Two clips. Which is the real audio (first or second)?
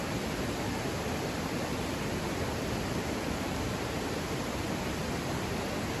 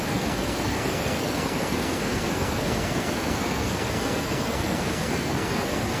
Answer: first